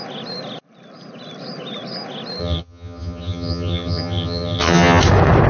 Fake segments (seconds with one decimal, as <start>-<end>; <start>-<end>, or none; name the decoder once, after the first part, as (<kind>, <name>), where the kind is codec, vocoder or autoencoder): 2.4-5.0 (vocoder, HiFi-GAN)